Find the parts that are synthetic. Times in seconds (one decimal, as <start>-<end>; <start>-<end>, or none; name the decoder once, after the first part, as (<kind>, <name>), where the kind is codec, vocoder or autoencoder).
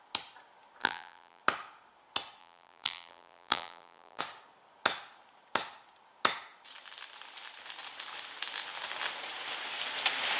0.8-1.4 (vocoder, BigVGAN v2); 2.4-4.2